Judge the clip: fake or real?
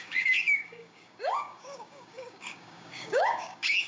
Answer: fake